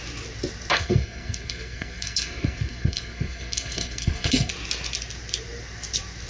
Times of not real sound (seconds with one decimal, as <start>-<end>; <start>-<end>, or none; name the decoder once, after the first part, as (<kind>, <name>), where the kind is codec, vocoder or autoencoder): 0.7-4.5 (codec, SNAC)